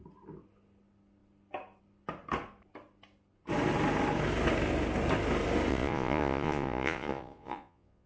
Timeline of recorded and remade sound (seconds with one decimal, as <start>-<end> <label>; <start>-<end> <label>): 0.0-5.7 recorded; 5.7-8.1 remade